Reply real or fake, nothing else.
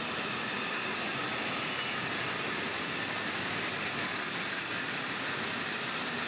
real